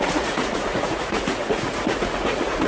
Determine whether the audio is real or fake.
fake